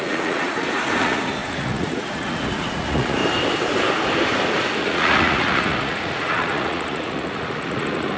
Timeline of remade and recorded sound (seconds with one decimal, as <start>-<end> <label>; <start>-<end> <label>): 0.0-3.2 remade; 3.2-4.8 recorded; 4.8-8.2 remade